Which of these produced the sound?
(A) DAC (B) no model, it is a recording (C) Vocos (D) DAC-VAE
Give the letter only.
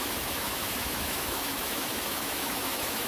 D